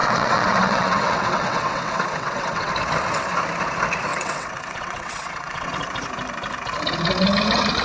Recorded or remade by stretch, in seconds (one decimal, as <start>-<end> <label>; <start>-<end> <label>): 0.0-2.7 remade; 2.7-4.1 recorded; 4.1-5.7 remade; 5.7-7.8 recorded